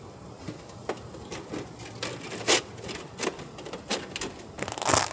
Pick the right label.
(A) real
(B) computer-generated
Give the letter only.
A